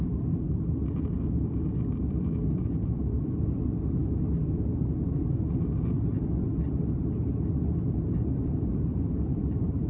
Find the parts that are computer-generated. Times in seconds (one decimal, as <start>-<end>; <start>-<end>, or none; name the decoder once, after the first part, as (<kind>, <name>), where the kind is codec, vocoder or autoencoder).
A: 0.0-4.0 (vocoder, BigVGAN v2); 6.8-9.9